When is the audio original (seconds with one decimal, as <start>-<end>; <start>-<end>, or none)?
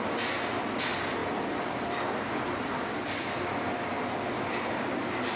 0.0-1.2; 4.4-5.4